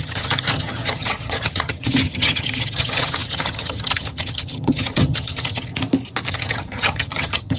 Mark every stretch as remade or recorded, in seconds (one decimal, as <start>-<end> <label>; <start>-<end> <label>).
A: 0.0-5.7 remade; 5.7-6.3 recorded; 6.3-7.6 remade